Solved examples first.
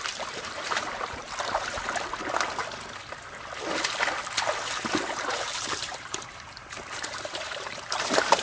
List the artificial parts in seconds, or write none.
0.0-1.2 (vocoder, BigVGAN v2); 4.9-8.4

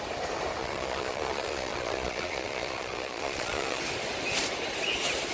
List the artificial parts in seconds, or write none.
0.6-3.8 (vocoder, Vocos)

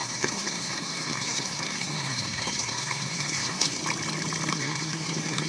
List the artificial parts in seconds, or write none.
0.0-3.8 (codec, SNAC); 4.5-5.5

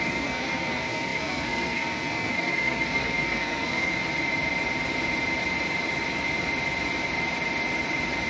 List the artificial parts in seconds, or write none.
0.0-4.0 (codec, SNAC)

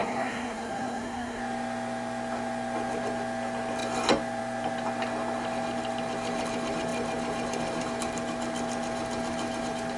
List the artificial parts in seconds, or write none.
0.0-1.4 (codec, SNAC)